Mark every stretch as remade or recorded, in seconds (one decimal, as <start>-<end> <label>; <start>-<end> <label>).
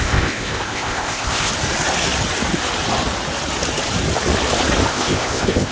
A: 0.0-1.5 remade; 1.5-4.9 recorded; 4.9-5.7 remade